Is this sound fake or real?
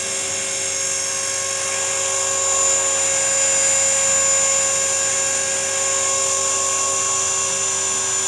real